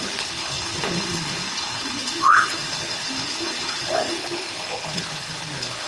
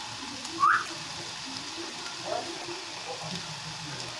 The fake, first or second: first